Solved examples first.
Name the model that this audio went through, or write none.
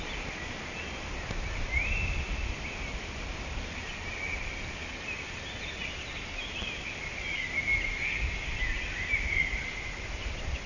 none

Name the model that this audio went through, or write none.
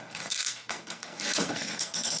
codec, SNAC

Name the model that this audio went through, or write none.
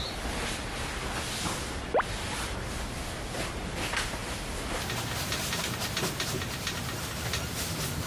none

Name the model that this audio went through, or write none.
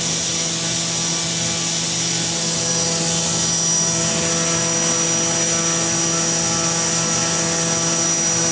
none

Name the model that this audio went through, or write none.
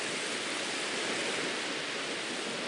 none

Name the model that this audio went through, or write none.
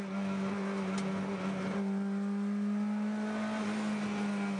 none